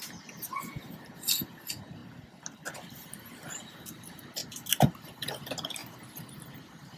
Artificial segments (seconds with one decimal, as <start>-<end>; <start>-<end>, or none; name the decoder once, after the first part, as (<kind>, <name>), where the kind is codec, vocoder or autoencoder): 4.4-5.3 (vocoder, BigVGAN v2); 5.8-7.0

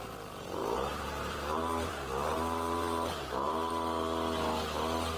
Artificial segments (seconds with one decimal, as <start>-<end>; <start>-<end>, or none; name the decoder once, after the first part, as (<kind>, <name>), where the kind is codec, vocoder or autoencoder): 0.6-3.7 (vocoder, BigVGAN v2)